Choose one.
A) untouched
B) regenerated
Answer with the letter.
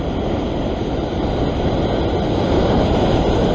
A